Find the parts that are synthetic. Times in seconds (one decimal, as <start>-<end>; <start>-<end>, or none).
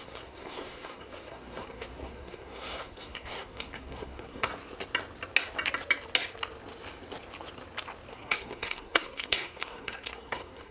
0.0-4.5; 8.1-10.7